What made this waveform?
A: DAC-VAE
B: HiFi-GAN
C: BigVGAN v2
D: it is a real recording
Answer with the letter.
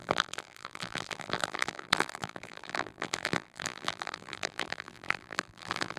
C